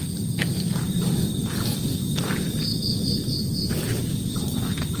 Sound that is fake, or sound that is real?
real